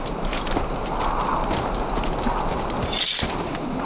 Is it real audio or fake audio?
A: real